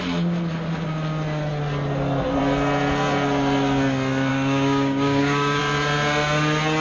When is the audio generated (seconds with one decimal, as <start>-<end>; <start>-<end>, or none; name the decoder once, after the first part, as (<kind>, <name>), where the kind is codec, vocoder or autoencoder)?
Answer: 4.3-5.6 (codec, DAC)